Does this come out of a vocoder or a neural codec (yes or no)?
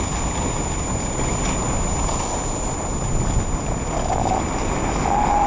no